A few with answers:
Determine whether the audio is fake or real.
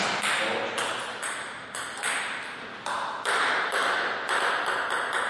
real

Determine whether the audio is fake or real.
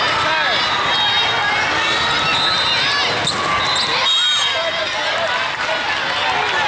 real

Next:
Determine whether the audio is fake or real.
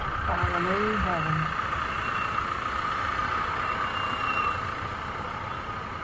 real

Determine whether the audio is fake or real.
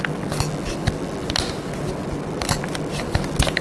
real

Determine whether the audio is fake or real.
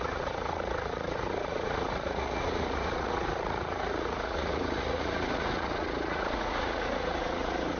fake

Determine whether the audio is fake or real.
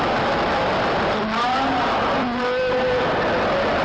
real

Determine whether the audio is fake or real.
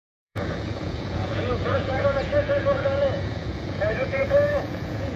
fake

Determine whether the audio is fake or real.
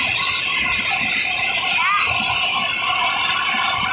real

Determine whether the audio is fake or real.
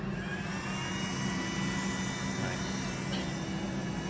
real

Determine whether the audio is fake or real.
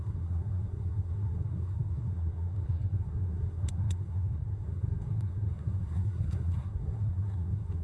fake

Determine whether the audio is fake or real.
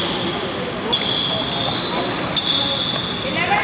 real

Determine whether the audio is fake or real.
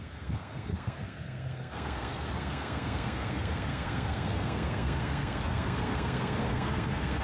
fake